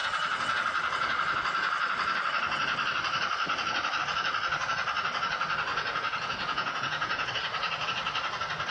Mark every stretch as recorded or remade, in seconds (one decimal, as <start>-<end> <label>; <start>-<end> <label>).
0.0-5.7 recorded; 5.7-7.3 remade; 7.3-8.7 recorded